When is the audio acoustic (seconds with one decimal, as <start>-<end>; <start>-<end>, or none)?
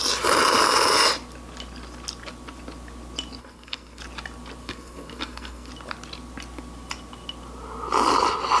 0.0-3.4; 4.0-4.6; 5.7-8.6